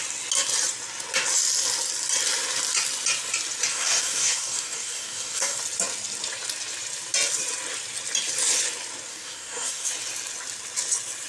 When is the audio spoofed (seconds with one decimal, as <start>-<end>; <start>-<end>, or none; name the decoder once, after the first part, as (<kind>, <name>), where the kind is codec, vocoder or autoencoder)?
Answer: 3.7-5.6 (codec, DAC); 9.1-9.9